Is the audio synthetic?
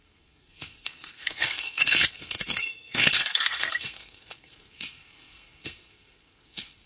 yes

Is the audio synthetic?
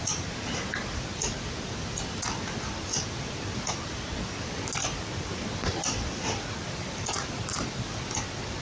no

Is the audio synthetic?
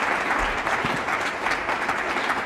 no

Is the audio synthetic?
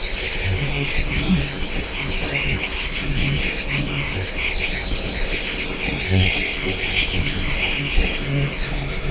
yes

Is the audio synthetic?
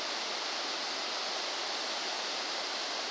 no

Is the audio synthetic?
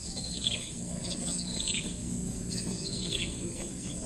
yes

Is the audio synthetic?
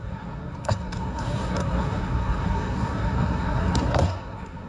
yes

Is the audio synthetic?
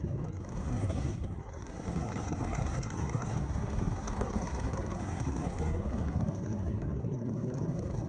yes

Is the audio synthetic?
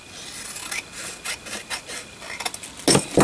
no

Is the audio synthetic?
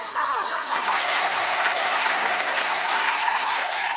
yes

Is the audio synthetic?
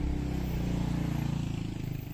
no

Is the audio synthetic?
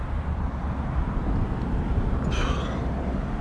no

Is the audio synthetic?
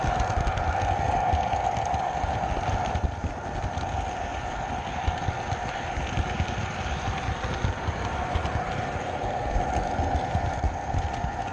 no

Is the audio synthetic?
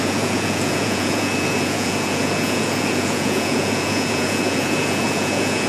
yes